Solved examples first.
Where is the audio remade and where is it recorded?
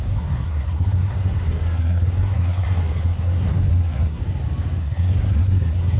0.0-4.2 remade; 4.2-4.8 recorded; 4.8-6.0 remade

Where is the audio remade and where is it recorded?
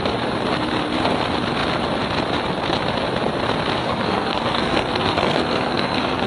0.0-3.8 recorded; 3.8-6.3 remade